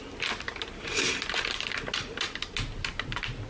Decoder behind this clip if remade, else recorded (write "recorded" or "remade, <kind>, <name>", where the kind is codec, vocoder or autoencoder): recorded